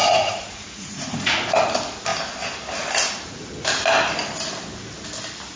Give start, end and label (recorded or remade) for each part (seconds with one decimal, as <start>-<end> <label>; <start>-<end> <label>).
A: 0.0-1.3 remade; 1.3-5.6 recorded